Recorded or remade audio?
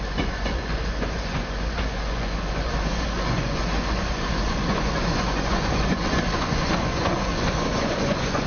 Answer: remade